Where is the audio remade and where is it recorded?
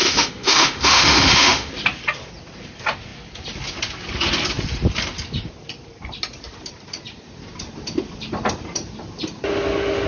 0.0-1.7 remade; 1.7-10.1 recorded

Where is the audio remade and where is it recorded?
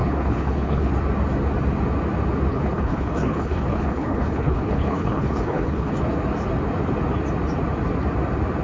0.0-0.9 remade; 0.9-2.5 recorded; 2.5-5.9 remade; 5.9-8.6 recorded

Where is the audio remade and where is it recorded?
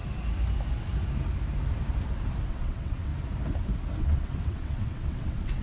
0.0-2.5 recorded; 2.5-3.1 remade; 3.1-4.0 recorded; 4.0-5.6 remade